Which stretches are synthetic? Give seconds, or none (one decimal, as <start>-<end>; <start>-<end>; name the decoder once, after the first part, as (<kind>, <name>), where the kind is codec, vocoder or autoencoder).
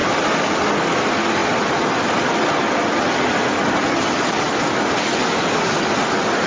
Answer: none